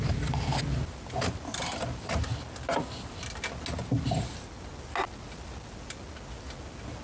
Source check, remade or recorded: recorded